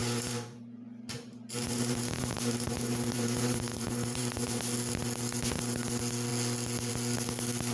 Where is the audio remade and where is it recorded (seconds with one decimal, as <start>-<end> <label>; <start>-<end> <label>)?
0.0-4.6 remade; 4.6-7.7 recorded